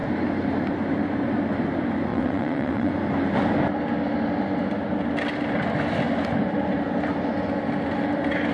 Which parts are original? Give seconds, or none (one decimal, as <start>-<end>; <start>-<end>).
0.0-2.1; 2.9-8.5